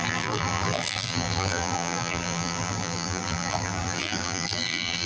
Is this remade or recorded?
remade